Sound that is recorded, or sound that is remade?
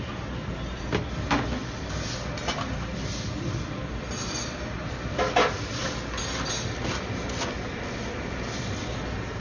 recorded